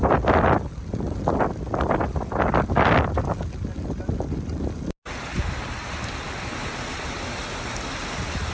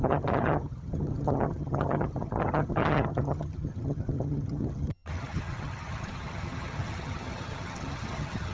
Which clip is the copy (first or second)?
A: second